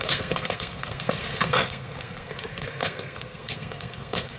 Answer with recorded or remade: remade